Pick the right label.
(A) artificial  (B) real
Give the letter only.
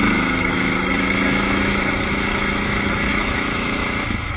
A